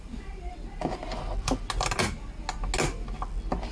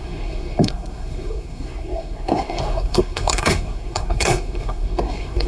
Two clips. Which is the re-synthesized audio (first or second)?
second